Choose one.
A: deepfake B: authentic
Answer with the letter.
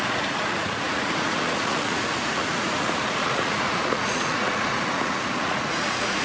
A